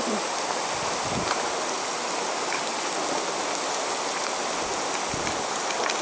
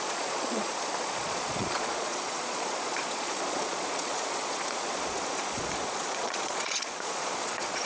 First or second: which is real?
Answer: first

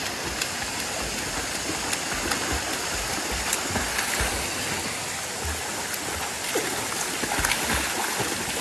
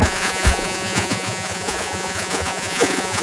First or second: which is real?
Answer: first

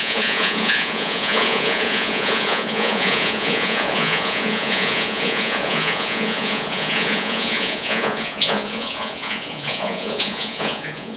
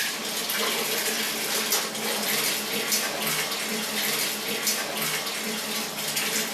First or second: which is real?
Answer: second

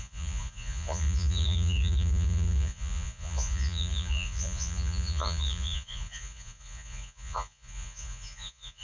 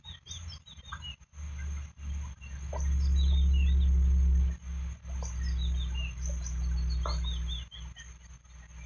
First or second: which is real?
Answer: second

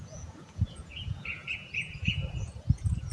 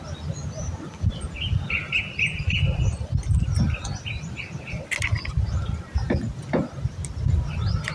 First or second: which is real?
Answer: second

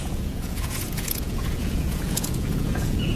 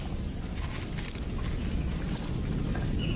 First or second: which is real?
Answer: second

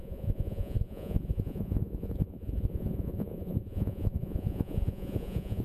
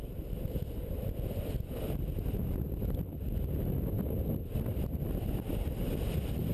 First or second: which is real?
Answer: second